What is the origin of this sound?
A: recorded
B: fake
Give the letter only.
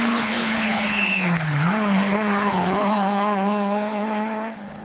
B